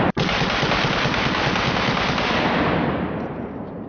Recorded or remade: recorded